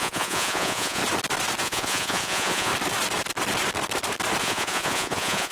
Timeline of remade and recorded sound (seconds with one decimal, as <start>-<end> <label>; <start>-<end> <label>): 0.0-1.0 remade; 1.0-1.6 recorded; 1.6-2.7 remade; 2.7-4.4 recorded; 4.4-5.5 remade